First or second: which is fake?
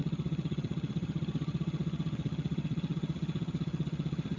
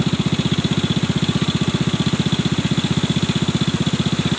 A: first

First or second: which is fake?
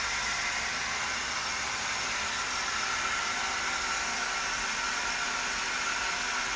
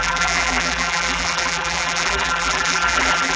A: second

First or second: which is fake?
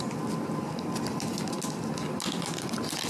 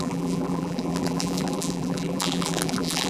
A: second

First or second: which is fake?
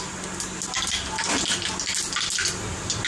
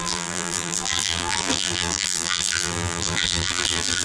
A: second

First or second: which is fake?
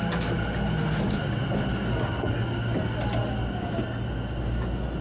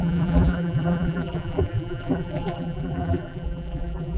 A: second